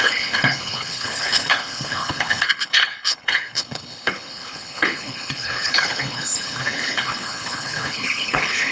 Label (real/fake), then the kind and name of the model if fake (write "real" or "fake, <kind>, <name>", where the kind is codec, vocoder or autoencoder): fake, codec, HILCodec